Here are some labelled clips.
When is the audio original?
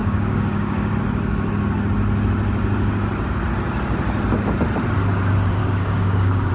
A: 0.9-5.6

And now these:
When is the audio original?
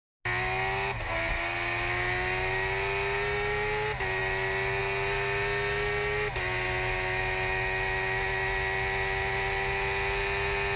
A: 0.0-10.8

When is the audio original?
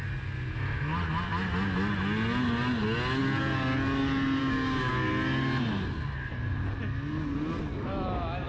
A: 0.0-4.4; 4.9-8.5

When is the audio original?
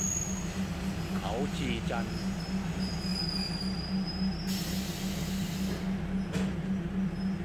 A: 0.0-7.4